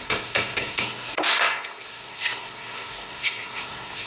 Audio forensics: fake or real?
fake